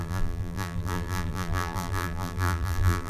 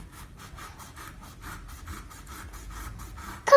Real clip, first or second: second